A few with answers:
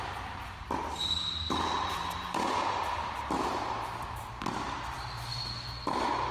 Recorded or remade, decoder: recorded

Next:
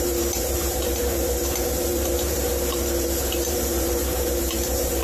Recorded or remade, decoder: remade, vocoder, BigVGAN v2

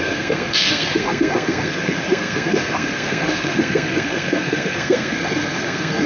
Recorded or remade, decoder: remade, codec, SNAC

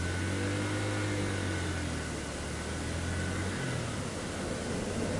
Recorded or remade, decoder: recorded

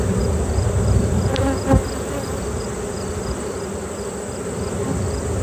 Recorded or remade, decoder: recorded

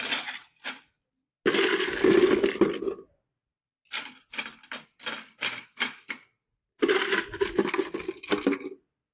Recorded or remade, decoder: recorded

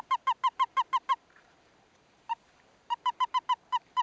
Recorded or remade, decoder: recorded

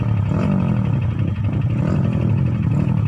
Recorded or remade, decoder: recorded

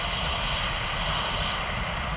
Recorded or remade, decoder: recorded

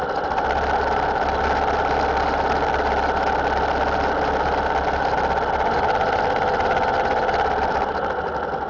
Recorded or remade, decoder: recorded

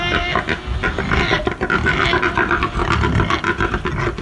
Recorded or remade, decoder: recorded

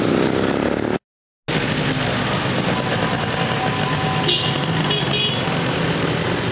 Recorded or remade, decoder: recorded